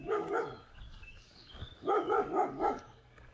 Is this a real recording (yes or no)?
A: no